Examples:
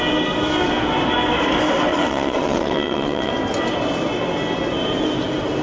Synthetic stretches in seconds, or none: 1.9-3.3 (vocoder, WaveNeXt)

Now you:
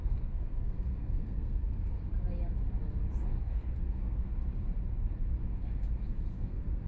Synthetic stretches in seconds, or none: 0.0-2.0 (codec, SNAC); 3.4-4.3; 6.3-6.9